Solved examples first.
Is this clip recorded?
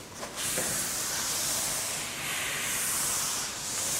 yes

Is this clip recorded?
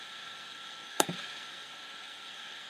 no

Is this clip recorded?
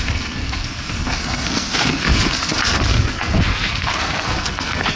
no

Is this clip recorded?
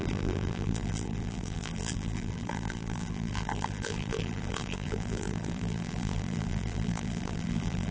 no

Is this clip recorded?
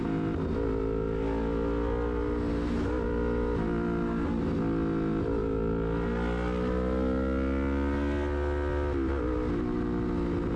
yes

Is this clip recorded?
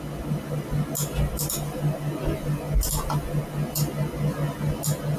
yes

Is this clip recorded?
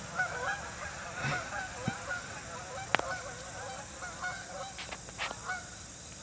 yes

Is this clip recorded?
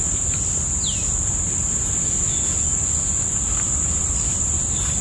yes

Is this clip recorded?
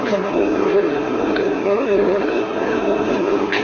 no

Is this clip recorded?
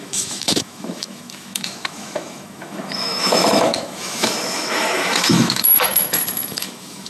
no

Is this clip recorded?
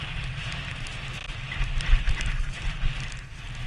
yes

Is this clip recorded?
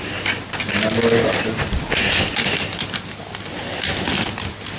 yes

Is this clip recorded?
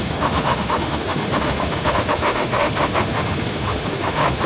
no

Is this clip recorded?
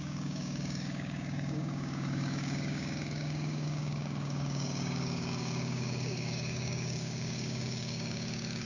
no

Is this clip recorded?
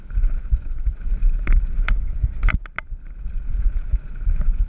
yes